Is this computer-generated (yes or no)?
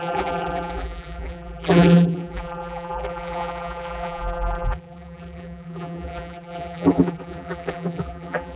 yes